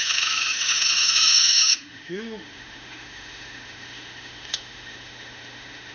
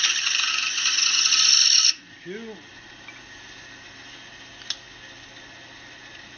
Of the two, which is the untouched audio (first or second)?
second